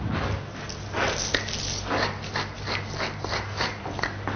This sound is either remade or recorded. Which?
recorded